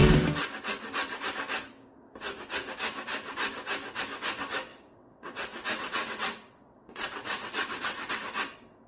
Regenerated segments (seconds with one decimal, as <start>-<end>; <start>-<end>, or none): 4.7-8.1